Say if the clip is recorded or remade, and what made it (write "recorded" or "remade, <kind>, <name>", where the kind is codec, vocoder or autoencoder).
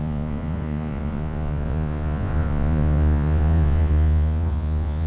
remade, vocoder, Vocos